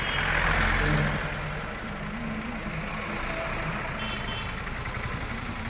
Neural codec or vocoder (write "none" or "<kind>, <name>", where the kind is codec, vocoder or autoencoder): none